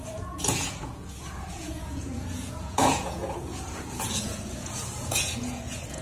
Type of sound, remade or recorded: remade